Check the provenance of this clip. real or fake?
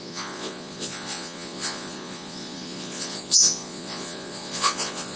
fake